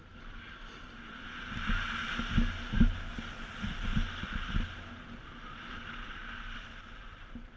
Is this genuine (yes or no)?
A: yes